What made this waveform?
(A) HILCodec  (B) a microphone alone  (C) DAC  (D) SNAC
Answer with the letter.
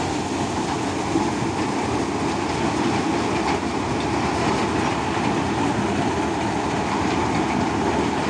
B